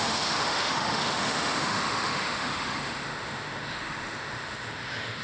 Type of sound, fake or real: fake